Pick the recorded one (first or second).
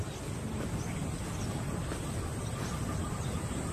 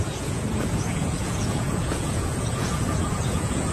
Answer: first